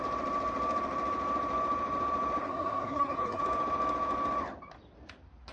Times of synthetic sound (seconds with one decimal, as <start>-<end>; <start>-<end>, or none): 2.4-3.4